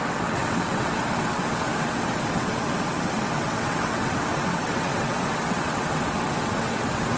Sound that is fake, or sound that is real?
fake